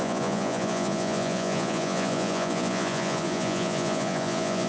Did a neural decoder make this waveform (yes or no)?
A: yes